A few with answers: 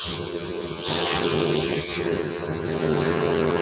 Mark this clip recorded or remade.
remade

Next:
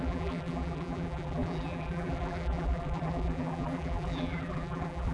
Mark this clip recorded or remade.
remade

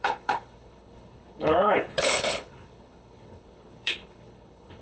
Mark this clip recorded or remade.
remade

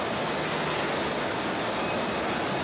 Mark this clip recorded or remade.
recorded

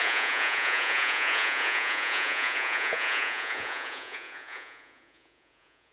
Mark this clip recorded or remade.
remade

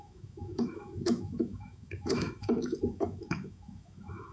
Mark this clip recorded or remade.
remade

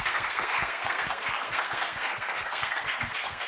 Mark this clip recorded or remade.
remade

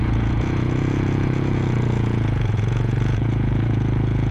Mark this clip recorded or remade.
remade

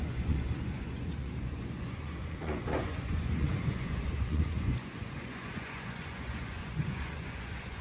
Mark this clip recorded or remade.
remade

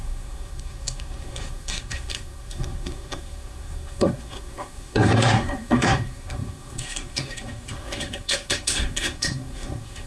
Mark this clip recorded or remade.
remade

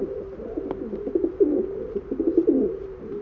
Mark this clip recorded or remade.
recorded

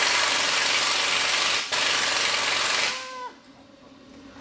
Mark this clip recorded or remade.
recorded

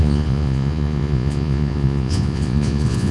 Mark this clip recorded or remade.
remade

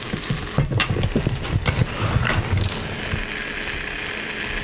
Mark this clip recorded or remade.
recorded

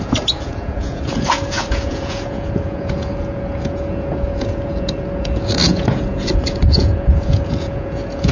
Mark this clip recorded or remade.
remade